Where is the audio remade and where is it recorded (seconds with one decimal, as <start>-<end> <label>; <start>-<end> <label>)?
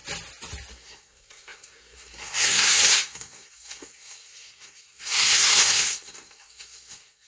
0.0-0.7 recorded; 0.7-7.3 remade